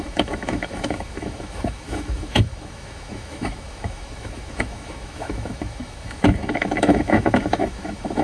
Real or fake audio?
fake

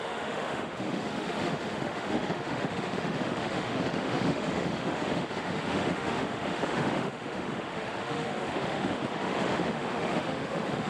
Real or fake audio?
fake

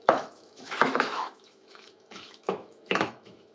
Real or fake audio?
fake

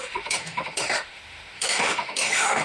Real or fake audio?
fake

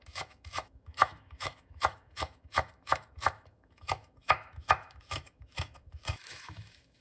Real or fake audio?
fake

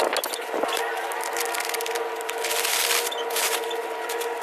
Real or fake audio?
real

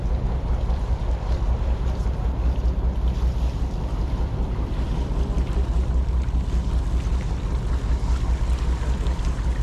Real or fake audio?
real